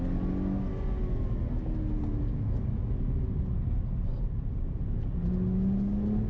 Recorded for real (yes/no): yes